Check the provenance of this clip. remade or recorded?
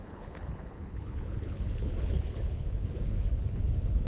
remade